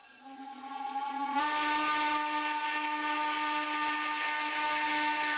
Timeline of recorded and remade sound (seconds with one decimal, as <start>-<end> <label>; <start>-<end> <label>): 0.0-1.4 remade; 1.4-5.4 recorded